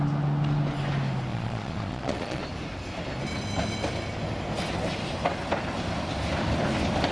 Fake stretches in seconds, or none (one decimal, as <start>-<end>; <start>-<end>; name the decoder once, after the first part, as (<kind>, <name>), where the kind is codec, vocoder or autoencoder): 1.3-2.4 (vocoder, Vocos)